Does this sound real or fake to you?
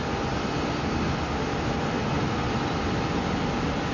real